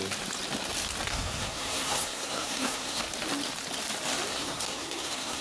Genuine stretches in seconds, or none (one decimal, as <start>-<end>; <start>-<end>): 0.0-1.1; 3.0-4.3